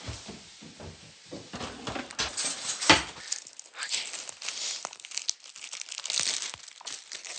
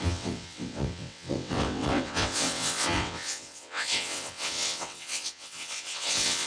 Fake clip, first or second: second